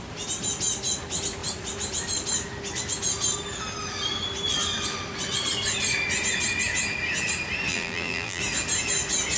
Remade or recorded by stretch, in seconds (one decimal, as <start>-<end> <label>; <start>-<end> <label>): 0.0-7.7 recorded; 7.7-8.4 remade; 8.4-9.4 recorded

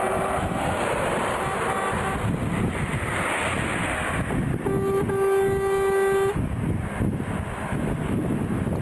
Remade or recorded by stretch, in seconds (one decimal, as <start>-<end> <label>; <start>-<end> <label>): 0.0-8.8 recorded

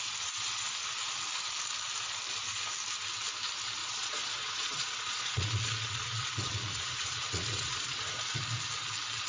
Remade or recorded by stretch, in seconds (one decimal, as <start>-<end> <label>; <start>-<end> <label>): 0.0-3.8 recorded; 3.8-8.2 remade; 8.2-9.3 recorded

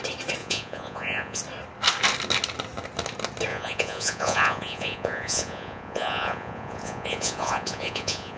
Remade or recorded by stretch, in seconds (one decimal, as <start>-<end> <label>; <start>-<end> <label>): 0.0-0.4 recorded; 0.4-1.4 remade; 1.4-3.5 recorded; 3.5-8.4 remade

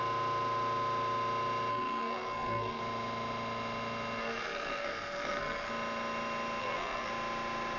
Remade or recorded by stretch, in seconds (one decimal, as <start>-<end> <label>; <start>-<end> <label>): 0.0-1.7 recorded; 1.7-2.8 remade; 2.8-4.2 recorded; 4.2-5.7 remade; 5.7-6.6 recorded; 6.6-7.1 remade; 7.1-7.8 recorded

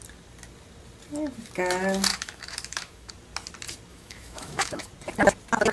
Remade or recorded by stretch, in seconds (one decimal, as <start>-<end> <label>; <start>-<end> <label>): 0.0-2.1 recorded; 2.1-3.1 remade; 3.1-3.9 recorded; 3.9-4.9 remade; 4.9-5.7 recorded